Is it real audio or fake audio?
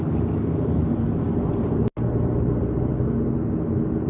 real